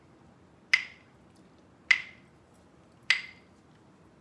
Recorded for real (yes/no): yes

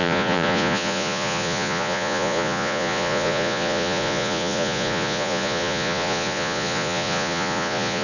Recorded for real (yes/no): no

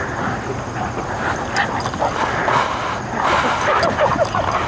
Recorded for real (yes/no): yes